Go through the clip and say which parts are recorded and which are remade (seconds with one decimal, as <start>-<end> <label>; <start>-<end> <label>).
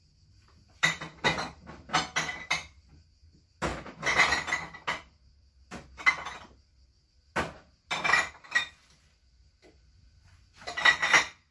0.0-11.5 recorded